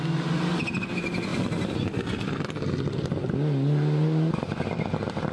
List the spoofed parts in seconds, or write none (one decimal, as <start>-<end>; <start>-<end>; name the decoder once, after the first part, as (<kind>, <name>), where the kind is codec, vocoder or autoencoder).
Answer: none